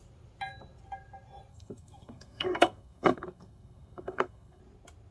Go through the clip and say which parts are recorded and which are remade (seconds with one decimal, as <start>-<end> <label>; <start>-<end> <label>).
0.0-1.5 recorded; 1.5-4.6 remade; 4.6-5.1 recorded